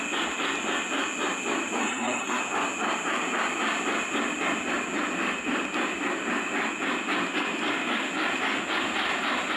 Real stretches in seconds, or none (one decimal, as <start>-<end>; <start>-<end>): 0.0-1.8; 2.4-9.6